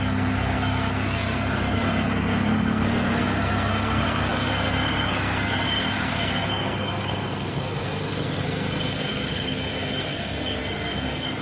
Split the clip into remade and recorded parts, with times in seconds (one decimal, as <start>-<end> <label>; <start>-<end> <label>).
0.0-11.4 remade